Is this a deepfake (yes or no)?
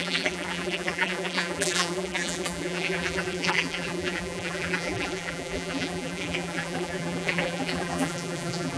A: yes